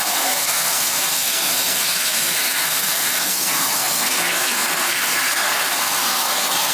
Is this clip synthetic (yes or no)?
yes